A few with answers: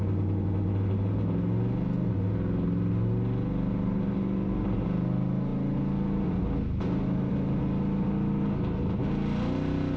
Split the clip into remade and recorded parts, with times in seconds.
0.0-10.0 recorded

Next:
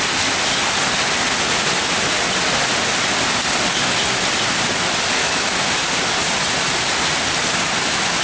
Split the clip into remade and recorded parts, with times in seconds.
0.0-5.2 recorded; 5.2-5.7 remade; 5.7-8.2 recorded

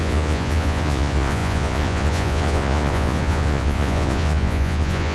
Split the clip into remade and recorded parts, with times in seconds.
0.0-5.1 remade

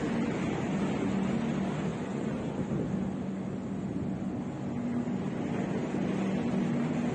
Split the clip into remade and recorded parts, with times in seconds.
0.0-1.9 recorded; 1.9-2.4 remade; 2.4-7.1 recorded

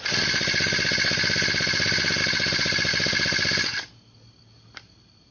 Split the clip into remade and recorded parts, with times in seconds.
0.0-5.3 recorded

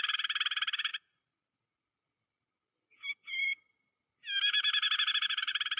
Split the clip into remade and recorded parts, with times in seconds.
0.0-5.8 recorded

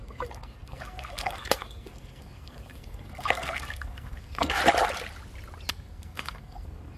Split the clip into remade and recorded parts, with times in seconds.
0.0-4.6 remade; 4.6-5.7 recorded; 5.7-7.0 remade